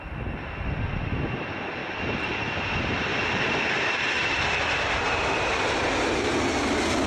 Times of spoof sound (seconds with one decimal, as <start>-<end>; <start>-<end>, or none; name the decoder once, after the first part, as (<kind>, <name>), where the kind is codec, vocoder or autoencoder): 1.8-2.4 (vocoder, BigVGAN v2); 3.1-6.3